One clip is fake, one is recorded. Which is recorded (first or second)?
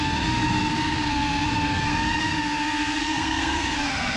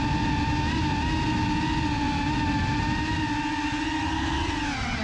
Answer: second